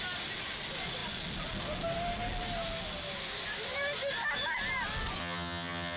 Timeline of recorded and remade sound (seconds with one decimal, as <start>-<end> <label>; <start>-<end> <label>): 0.0-5.2 recorded; 5.2-6.0 remade